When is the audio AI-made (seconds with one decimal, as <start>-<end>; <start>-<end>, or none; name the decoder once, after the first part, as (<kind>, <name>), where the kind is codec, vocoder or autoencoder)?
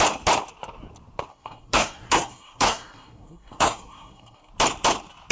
1.3-4.5 (codec, SNAC)